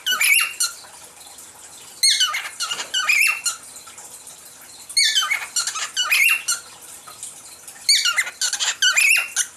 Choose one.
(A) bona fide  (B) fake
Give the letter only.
A